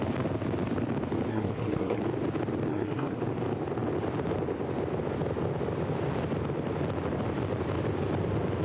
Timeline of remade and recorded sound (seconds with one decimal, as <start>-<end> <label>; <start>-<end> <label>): 0.0-1.3 recorded; 1.3-2.0 remade; 2.0-2.7 recorded; 2.7-3.2 remade; 3.2-8.6 recorded